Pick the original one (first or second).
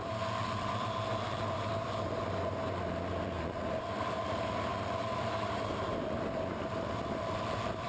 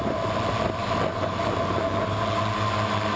second